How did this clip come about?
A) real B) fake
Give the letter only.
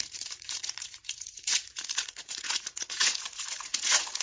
B